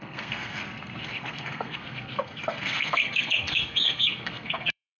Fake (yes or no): yes